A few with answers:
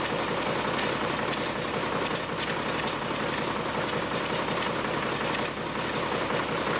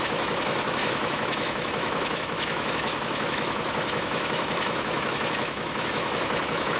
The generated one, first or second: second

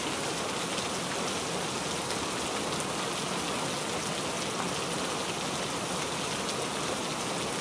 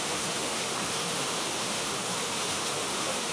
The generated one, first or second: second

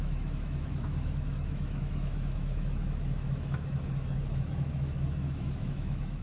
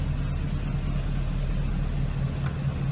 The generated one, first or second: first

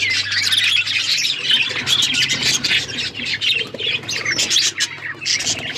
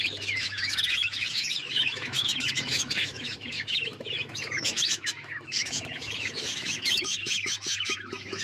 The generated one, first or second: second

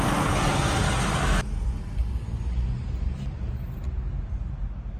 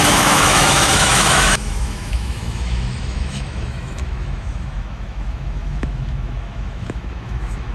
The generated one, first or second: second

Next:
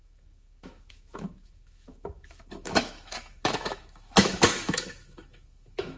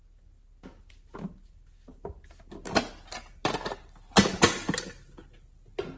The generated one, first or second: first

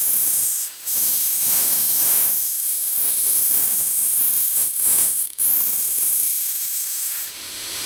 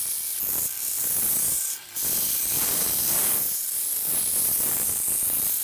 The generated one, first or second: first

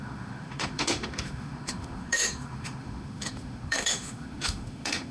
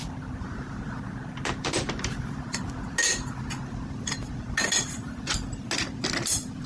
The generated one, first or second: first